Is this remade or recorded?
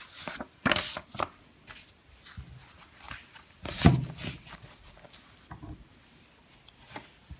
recorded